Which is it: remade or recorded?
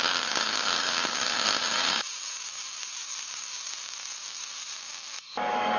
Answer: remade